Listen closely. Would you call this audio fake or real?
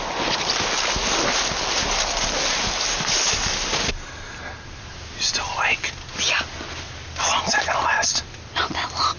real